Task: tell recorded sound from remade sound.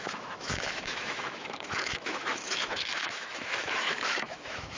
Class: remade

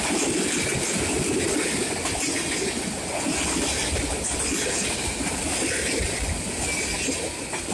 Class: recorded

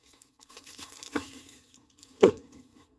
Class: remade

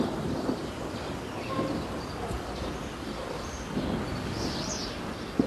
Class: recorded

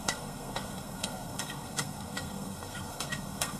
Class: remade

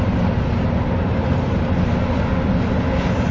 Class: recorded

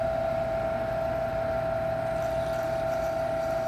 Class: recorded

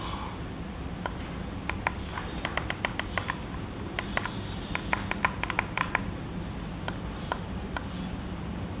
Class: recorded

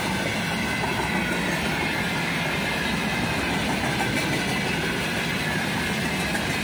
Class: recorded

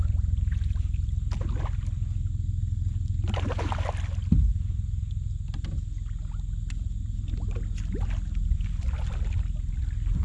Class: recorded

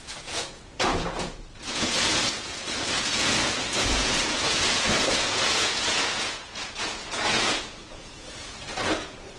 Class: remade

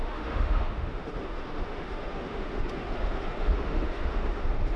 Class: remade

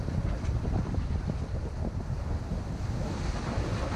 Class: recorded